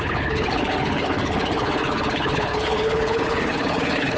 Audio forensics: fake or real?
fake